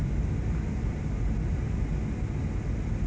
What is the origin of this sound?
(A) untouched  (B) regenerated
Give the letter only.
A